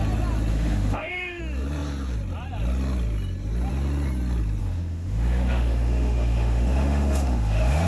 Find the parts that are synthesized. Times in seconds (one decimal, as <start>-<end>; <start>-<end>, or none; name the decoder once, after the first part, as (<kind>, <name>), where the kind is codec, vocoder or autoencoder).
0.5-1.4 (autoencoder, DAC-VAE); 4.6-7.9